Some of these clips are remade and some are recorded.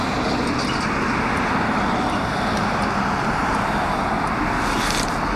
recorded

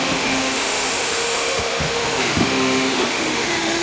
remade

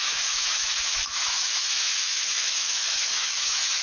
remade